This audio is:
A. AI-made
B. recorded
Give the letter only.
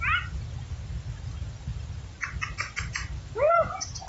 B